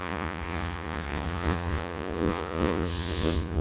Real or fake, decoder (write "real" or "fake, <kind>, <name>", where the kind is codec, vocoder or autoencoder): fake, vocoder, Vocos